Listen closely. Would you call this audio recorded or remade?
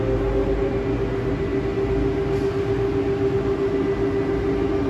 recorded